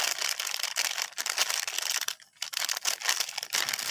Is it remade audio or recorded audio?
recorded